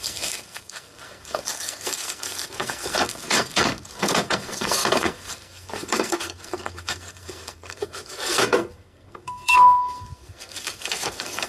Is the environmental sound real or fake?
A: fake